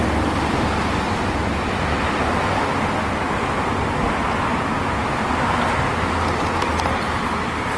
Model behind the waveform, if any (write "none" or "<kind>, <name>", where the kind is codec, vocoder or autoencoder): none